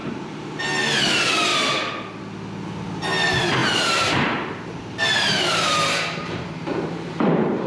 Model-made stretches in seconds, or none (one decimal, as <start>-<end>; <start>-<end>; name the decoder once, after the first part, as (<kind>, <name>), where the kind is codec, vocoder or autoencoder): 0.0-0.6 (vocoder, BigVGAN v2); 3.6-7.7